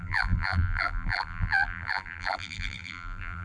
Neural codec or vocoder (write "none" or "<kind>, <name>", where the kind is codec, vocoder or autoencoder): vocoder, BigVGAN v2